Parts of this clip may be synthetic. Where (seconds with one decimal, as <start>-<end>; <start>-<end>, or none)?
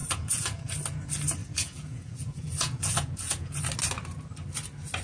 0.0-0.7; 1.4-3.6